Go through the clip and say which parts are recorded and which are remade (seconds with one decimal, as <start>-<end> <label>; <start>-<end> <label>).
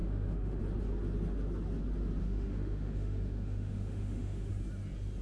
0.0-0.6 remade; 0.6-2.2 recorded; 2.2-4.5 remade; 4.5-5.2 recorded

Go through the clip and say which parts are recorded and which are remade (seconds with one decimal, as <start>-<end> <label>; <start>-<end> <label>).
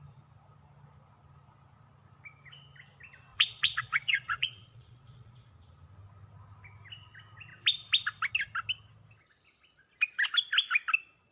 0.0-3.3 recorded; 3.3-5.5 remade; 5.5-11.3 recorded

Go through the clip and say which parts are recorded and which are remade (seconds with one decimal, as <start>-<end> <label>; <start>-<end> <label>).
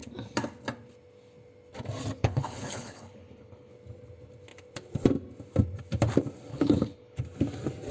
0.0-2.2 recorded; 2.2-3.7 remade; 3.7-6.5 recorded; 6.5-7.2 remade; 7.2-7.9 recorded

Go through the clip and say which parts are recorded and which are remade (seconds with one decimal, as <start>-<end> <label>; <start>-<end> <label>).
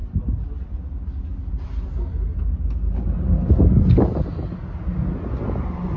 0.0-6.0 recorded